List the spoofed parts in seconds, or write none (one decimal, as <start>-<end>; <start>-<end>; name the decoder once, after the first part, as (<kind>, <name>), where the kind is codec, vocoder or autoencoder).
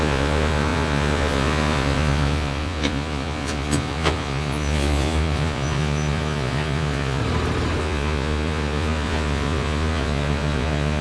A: 0.0-7.2 (vocoder, Vocos); 7.8-11.0